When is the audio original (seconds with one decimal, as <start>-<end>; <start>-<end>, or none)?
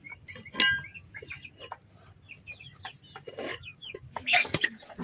0.0-3.5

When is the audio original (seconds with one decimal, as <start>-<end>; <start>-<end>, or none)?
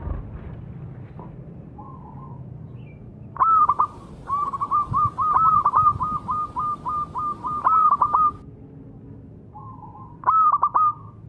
0.0-11.3